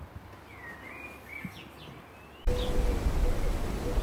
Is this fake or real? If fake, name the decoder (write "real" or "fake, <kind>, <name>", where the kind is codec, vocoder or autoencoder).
real